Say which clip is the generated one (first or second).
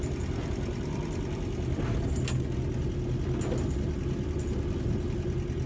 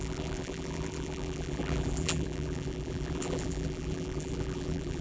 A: second